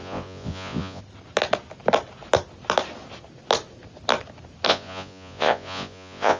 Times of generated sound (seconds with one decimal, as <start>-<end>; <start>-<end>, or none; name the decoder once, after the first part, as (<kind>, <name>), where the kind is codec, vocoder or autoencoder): 0.0-1.0 (vocoder, Vocos); 4.7-6.4